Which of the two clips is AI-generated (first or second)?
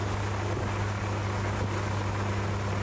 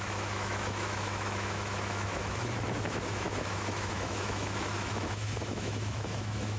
second